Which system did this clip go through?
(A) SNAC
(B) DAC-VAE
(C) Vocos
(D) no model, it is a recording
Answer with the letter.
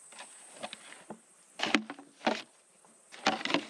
D